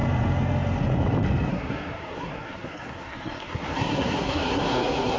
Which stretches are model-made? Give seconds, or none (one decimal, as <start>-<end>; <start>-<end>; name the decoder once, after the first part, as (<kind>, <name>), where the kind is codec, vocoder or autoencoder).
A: 1.5-5.2 (codec, SNAC)